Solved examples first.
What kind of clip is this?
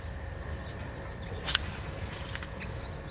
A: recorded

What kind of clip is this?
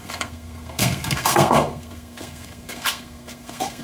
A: remade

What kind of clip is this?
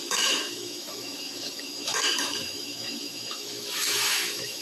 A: remade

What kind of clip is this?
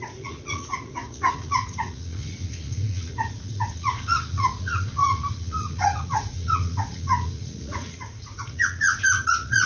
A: remade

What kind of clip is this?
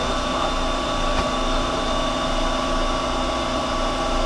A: recorded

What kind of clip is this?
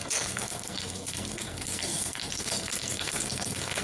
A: remade